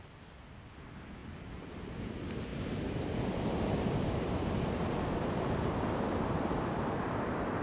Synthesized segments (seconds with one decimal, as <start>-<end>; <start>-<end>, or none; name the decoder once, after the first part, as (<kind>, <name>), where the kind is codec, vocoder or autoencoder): 1.2-2.1 (vocoder, BigVGAN v2); 2.5-6.9